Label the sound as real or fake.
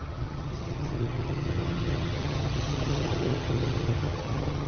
fake